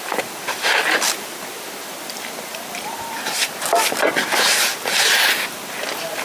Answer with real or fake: fake